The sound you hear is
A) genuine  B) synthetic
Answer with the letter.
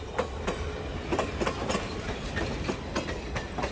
A